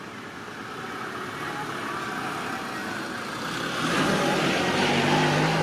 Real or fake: real